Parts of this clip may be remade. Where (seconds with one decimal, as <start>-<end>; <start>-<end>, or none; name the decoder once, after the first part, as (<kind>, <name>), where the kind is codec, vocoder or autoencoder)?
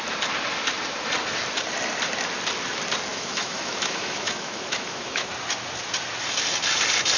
3.1-5.3 (autoencoder, DAC-VAE)